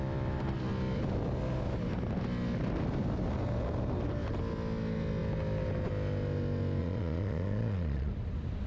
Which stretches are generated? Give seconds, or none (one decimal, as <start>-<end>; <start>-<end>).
6.8-8.1

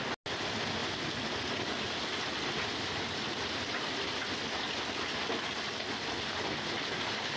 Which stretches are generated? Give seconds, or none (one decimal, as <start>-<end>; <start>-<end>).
none

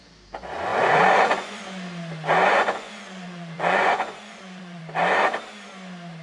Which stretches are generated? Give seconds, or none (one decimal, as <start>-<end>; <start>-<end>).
0.7-1.6; 2.5-4.8

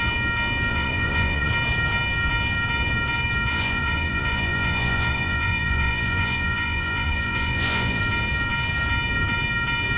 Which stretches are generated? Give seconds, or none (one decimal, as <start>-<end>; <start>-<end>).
0.7-1.5; 3.5-8.0